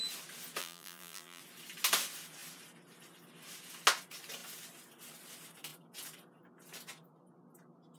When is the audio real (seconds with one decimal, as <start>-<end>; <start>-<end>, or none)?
0.0-0.6; 1.4-8.0